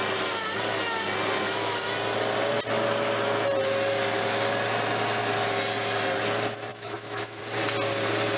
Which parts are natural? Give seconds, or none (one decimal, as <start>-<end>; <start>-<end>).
0.0-6.7; 7.4-8.4